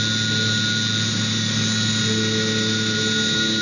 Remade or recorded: recorded